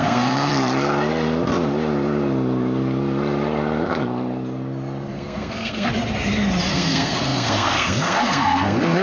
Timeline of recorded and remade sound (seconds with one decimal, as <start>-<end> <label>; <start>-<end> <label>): 0.0-0.5 remade; 0.5-5.1 recorded; 5.1-5.9 remade; 5.9-6.7 recorded; 6.7-9.0 remade